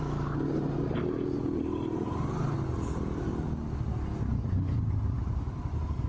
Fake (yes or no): no